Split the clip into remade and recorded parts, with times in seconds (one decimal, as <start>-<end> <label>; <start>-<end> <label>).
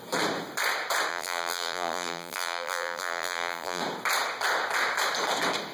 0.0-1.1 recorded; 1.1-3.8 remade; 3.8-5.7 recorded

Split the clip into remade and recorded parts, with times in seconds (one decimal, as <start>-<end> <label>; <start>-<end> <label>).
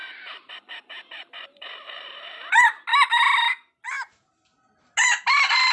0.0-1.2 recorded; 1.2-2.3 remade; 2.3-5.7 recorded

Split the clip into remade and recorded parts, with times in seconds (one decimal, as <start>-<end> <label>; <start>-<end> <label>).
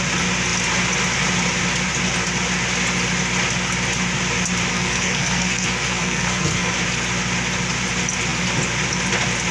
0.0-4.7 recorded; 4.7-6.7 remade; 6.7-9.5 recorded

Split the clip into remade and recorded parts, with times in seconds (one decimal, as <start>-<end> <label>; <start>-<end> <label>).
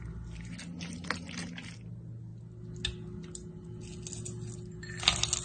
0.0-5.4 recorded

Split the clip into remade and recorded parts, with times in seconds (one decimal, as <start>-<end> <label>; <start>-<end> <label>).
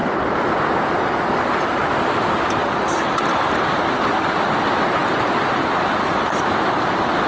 0.0-2.6 recorded; 2.6-3.3 remade; 3.3-7.3 recorded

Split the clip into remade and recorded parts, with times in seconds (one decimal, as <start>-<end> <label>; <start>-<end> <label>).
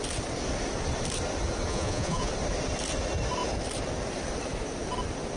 0.0-1.7 recorded; 1.7-2.3 remade; 2.3-5.4 recorded